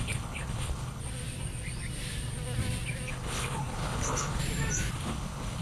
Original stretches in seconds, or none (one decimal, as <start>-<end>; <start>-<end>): 1.0-3.1; 4.4-4.9